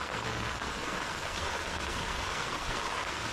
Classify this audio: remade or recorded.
remade